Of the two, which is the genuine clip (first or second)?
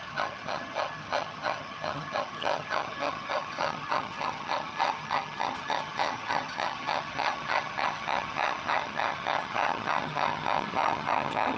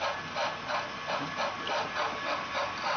second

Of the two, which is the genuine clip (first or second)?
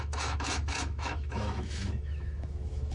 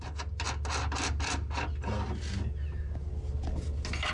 second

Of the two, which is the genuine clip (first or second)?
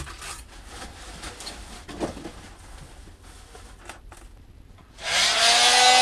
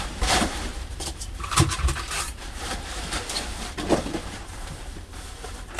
first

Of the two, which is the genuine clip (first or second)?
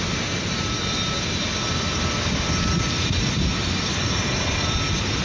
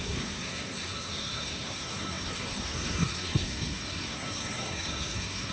first